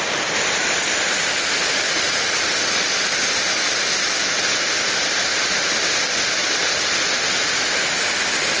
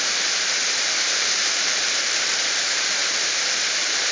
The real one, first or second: first